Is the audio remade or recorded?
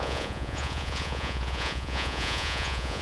remade